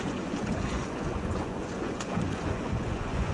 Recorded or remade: remade